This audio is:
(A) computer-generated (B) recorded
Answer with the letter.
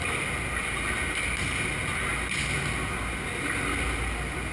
B